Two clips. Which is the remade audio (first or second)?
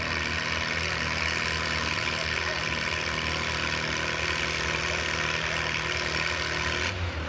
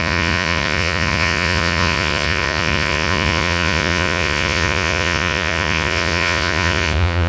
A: second